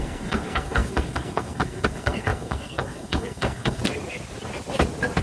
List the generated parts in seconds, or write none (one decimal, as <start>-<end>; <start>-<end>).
0.0-3.8